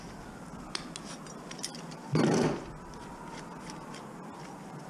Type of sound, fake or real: real